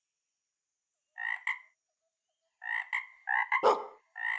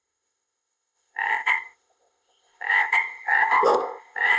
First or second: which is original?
first